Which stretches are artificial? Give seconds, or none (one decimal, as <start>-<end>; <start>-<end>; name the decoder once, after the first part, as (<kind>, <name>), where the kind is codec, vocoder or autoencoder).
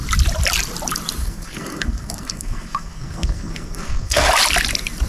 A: 1.2-4.3 (codec, SNAC)